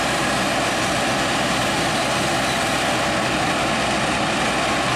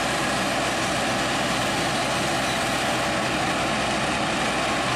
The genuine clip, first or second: second